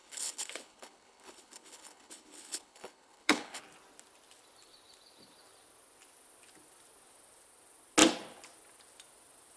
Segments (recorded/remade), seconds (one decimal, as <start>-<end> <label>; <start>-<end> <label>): 0.0-3.6 remade; 3.6-9.6 recorded

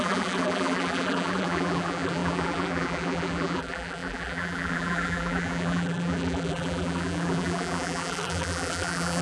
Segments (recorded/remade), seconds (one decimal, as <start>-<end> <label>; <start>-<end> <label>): 0.0-9.2 remade

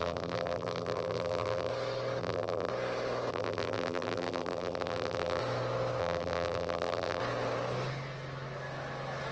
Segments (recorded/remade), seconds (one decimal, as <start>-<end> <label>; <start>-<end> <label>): 0.0-1.7 remade; 1.7-2.2 recorded; 2.2-2.7 remade; 2.7-3.3 recorded; 3.3-5.4 remade; 5.4-6.0 recorded; 6.0-7.2 remade; 7.2-9.3 recorded

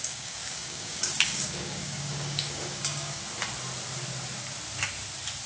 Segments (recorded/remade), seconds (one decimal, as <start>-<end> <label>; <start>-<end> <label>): 0.0-3.2 remade; 3.2-5.5 recorded

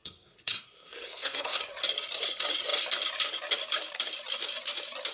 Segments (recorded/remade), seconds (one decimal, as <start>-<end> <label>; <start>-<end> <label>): 0.0-1.6 remade; 1.6-5.1 recorded